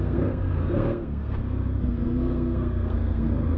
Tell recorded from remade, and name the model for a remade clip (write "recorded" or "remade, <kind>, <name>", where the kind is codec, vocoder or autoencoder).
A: remade, codec, SNAC